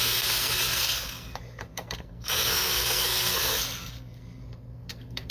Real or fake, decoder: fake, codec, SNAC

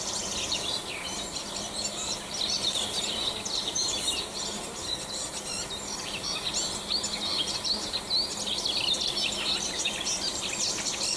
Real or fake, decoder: real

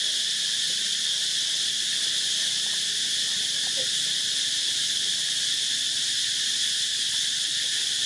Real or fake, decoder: real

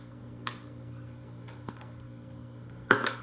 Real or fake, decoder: fake, codec, SNAC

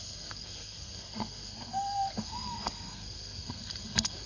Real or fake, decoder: fake, codec, SNAC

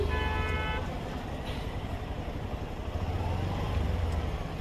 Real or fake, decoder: real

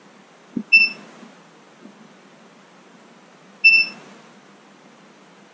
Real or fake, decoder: real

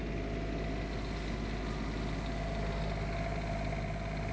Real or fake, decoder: real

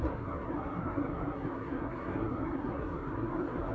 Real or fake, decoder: fake, codec, SNAC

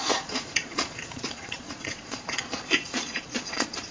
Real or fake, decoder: fake, vocoder, Vocos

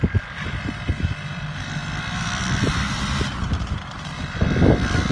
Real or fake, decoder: real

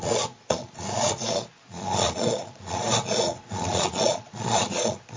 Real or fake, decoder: fake, vocoder, Vocos